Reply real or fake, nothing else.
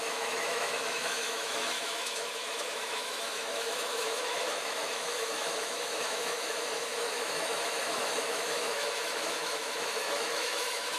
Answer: fake